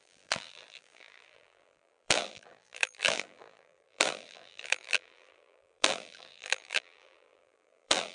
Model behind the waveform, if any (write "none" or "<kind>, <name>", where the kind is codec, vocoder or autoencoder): vocoder, BigVGAN v2